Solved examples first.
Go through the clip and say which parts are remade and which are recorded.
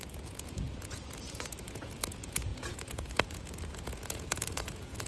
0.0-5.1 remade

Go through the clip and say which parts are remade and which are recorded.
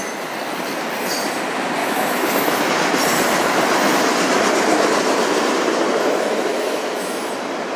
0.0-1.8 recorded; 1.8-2.7 remade; 2.7-6.5 recorded; 6.5-7.2 remade; 7.2-7.8 recorded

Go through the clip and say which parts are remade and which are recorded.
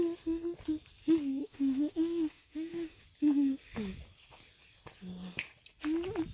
0.0-1.4 recorded; 1.4-3.0 remade; 3.0-6.3 recorded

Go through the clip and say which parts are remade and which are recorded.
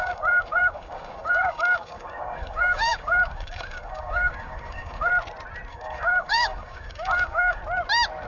0.0-5.1 remade; 5.1-5.7 recorded; 5.7-7.6 remade; 7.6-8.3 recorded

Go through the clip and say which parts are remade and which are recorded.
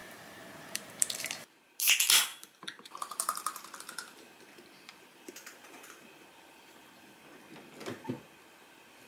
0.0-1.9 remade; 1.9-2.3 recorded; 2.3-7.2 remade; 7.2-9.1 recorded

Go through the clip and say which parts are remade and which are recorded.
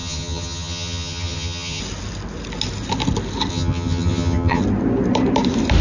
0.0-1.8 remade; 1.8-3.5 recorded; 3.5-4.6 remade; 4.6-5.8 recorded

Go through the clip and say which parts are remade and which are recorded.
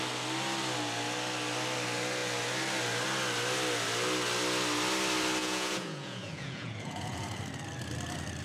0.0-5.4 recorded; 5.4-7.4 remade; 7.4-8.4 recorded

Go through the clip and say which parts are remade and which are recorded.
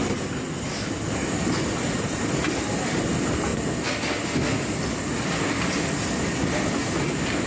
0.0-7.5 recorded